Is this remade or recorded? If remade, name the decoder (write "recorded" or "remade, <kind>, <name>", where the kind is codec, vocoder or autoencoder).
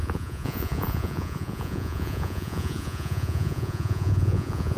remade, vocoder, Vocos